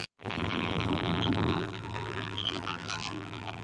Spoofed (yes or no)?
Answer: yes